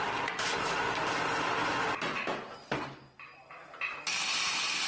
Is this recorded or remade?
recorded